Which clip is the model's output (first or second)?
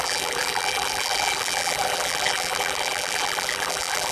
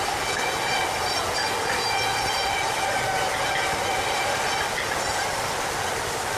first